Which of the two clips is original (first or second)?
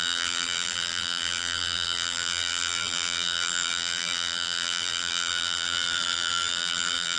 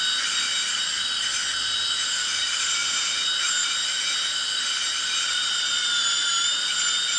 second